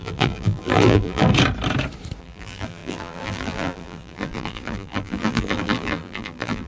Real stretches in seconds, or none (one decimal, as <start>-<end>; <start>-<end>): 1.3-2.2